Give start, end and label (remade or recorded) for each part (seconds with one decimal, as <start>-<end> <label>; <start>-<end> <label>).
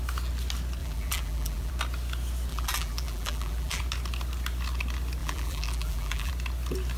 0.0-0.8 recorded; 0.8-1.7 remade; 1.7-2.5 recorded; 2.5-3.8 remade; 3.8-5.2 recorded; 5.2-6.3 remade; 6.3-7.0 recorded